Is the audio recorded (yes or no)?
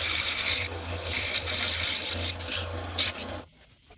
yes